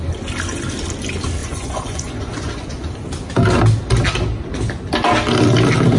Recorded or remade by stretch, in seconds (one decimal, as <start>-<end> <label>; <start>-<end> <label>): 0.0-1.4 recorded; 1.4-2.9 remade; 2.9-6.0 recorded